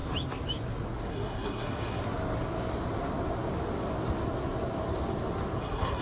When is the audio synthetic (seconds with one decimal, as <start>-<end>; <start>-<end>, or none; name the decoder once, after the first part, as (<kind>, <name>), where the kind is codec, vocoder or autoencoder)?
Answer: 1.1-2.0 (codec, SNAC); 5.6-6.0